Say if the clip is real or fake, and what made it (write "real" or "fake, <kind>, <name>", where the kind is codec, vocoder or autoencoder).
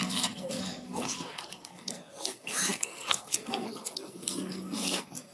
fake, codec, SNAC